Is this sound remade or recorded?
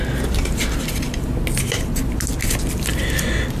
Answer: recorded